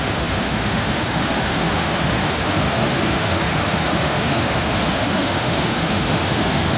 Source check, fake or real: fake